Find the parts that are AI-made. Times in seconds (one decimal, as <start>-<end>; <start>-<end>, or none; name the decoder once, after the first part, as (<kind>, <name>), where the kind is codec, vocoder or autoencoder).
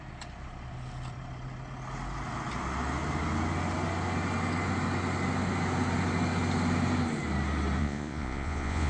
7.8-8.9 (vocoder, Vocos)